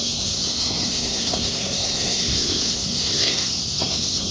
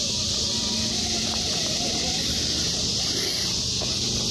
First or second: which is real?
second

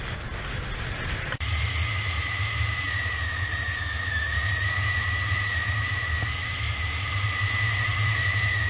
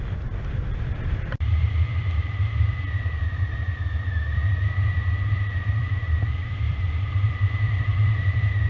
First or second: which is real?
first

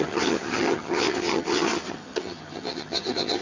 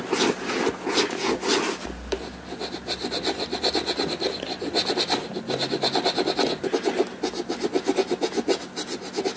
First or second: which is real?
second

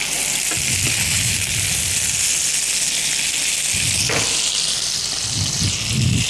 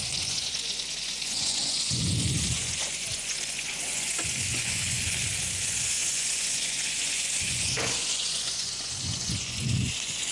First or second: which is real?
first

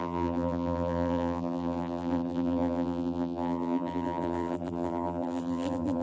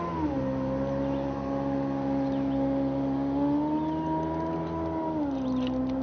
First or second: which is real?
second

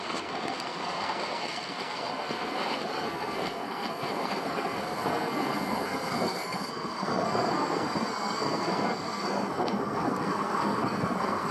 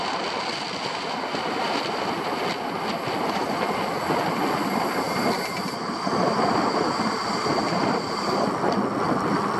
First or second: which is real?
second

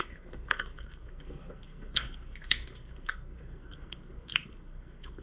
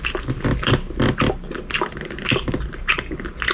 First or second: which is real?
second